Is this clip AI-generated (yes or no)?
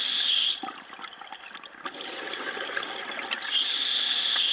no